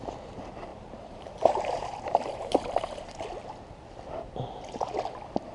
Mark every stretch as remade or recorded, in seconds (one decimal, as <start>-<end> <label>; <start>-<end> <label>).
0.0-0.7 recorded; 0.7-3.1 remade; 3.1-5.5 recorded